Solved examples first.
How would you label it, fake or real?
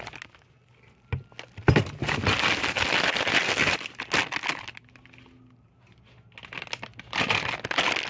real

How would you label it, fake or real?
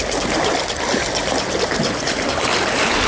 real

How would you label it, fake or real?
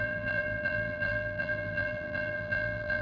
fake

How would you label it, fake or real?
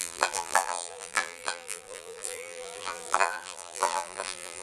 fake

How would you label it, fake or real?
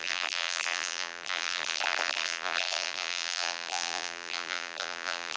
fake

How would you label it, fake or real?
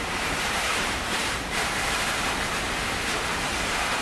fake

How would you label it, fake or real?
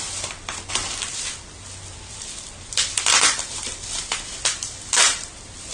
fake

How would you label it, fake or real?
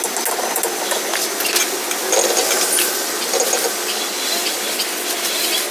real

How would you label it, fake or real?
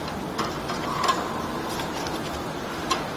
real